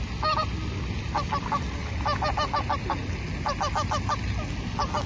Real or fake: real